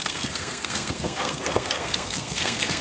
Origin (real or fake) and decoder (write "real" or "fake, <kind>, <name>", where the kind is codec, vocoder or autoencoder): fake, codec, SNAC